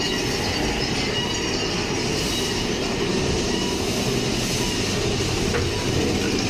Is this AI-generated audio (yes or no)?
no